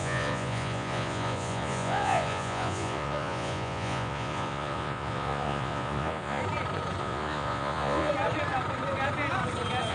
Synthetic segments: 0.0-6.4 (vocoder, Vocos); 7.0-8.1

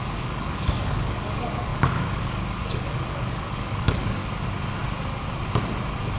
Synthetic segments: 0.0-4.2 (codec, DAC)

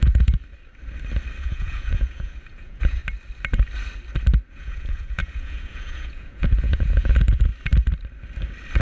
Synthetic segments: 0.0-0.4 (vocoder, Vocos); 1.4-3.0; 4.5-7.5

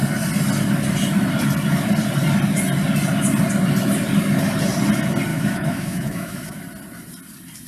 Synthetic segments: 5.3-6.6 (autoencoder, DAC-VAE)

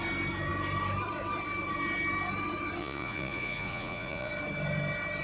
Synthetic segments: 2.8-4.3 (vocoder, Vocos)

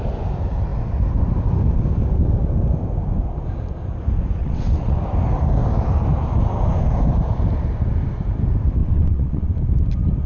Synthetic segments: 4.4-5.0 (vocoder, WaveNeXt); 8.8-9.6

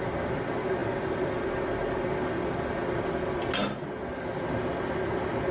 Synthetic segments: none